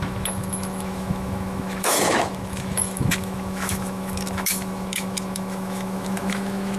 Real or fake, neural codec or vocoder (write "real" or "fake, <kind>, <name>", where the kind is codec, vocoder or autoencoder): fake, autoencoder, DAC-VAE